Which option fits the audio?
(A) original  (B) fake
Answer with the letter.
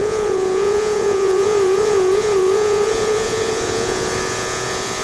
B